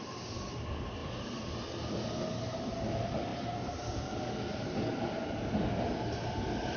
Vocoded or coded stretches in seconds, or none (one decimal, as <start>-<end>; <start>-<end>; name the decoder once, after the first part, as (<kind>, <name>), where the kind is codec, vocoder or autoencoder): none

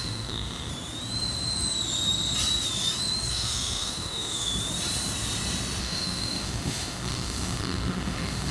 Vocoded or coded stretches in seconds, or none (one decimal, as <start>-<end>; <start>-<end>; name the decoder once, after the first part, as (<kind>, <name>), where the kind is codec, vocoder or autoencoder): 0.0-0.7 (autoencoder, DAC-VAE); 3.3-4.5; 5.8-8.5

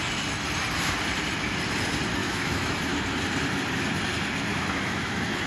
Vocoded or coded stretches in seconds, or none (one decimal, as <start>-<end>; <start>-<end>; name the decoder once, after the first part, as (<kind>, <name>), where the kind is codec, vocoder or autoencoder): 2.2-2.8 (autoencoder, DAC-VAE); 4.5-5.5

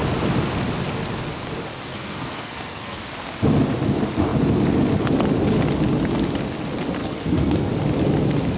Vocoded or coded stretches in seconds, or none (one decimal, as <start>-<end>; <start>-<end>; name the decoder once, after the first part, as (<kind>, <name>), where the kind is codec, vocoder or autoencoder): 1.9-3.0 (codec, SNAC); 7.0-7.7

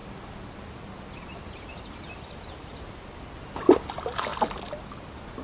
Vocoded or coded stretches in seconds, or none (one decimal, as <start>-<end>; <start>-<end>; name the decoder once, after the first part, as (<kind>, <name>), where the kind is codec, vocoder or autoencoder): none